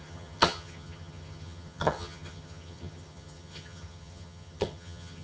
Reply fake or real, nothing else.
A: fake